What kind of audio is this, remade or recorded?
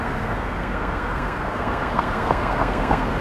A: remade